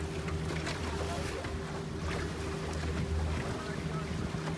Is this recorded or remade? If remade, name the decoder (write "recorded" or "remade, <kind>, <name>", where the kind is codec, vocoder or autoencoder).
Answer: recorded